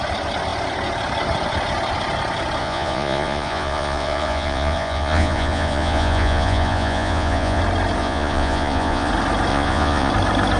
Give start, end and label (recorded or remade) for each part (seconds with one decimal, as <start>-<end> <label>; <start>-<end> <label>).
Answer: 0.0-2.6 recorded; 2.6-7.6 remade; 7.6-8.0 recorded; 8.0-9.1 remade; 9.1-9.5 recorded; 9.5-10.1 remade; 10.1-10.6 recorded